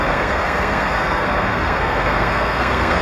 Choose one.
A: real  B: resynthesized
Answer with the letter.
B